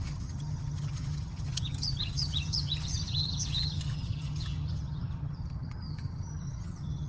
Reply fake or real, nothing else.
fake